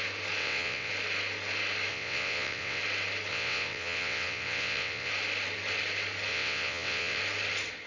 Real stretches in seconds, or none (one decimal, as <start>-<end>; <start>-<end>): 0.0-0.4; 0.9-1.9; 2.8-3.3; 5.1-6.3; 7.2-7.9